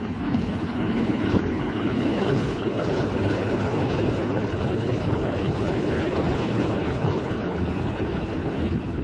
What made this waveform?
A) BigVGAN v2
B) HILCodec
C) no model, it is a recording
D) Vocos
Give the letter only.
B